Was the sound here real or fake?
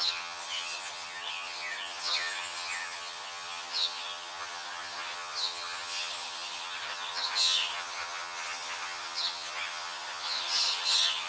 fake